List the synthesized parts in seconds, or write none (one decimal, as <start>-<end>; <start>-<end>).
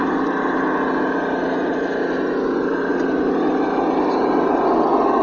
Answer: none